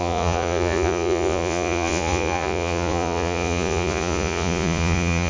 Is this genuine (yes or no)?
no